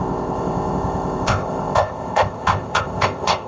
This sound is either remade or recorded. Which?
remade